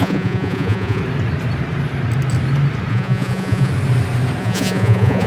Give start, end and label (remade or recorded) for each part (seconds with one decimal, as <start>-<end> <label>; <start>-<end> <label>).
0.0-1.0 remade; 1.0-2.9 recorded; 2.9-3.7 remade; 3.7-4.4 recorded; 4.4-5.3 remade